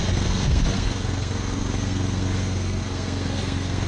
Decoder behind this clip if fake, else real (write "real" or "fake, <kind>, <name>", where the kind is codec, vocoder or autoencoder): fake, codec, SNAC